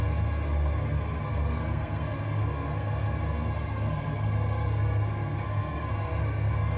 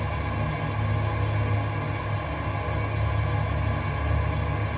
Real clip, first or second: second